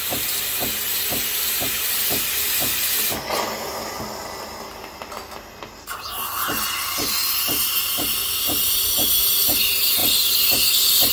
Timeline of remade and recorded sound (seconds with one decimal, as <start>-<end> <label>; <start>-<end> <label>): 0.0-11.1 recorded